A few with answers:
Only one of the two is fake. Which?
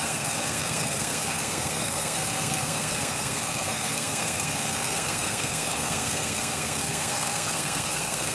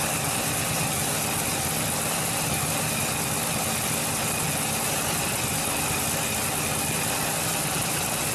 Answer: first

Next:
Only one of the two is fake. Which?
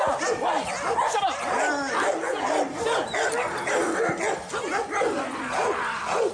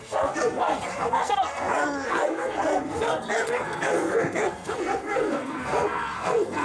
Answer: second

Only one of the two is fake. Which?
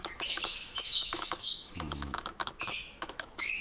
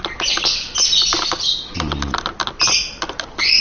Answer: first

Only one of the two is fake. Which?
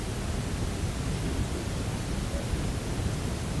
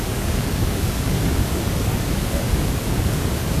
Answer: second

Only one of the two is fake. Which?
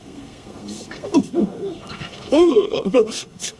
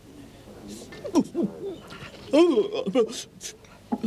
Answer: first